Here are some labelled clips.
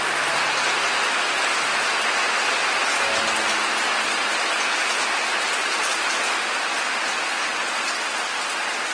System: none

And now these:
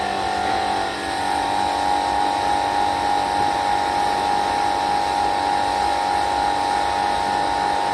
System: none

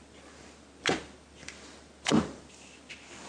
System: none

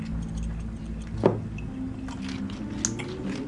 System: none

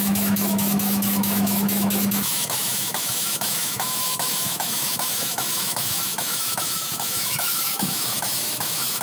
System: autoencoder, DAC-VAE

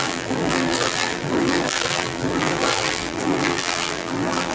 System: vocoder, BigVGAN v2